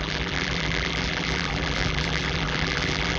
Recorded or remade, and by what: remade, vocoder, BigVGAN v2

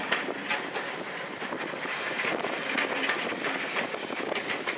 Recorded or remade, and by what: recorded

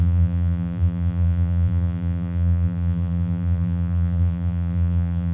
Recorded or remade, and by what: remade, vocoder, BigVGAN v2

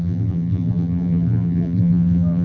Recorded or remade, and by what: remade, vocoder, BigVGAN v2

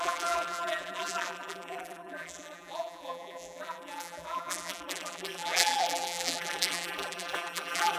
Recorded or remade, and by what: remade, vocoder, BigVGAN v2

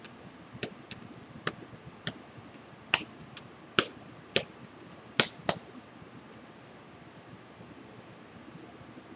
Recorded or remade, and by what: recorded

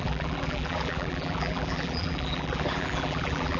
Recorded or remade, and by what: remade, vocoder, BigVGAN v2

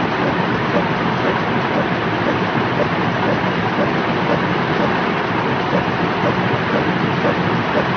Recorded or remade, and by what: recorded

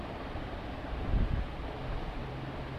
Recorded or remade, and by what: recorded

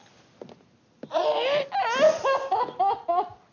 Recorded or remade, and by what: recorded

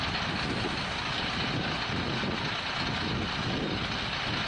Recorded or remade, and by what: recorded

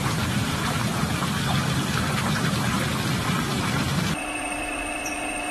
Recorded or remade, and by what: remade, vocoder, BigVGAN v2